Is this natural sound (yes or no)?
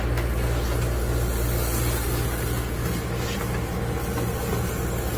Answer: yes